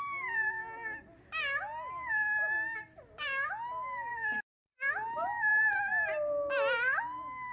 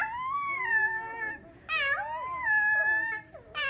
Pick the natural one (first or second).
first